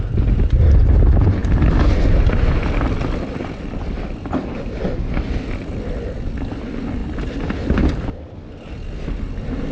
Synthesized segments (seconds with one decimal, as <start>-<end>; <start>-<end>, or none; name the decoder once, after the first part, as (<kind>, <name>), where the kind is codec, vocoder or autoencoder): none